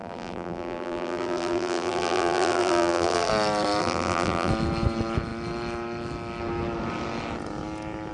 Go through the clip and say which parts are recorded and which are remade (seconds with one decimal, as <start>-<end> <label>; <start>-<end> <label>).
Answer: 0.0-3.3 remade; 3.3-3.8 recorded; 3.8-4.5 remade; 4.5-8.1 recorded